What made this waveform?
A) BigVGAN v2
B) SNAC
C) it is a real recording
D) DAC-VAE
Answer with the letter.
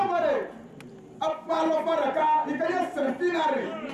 C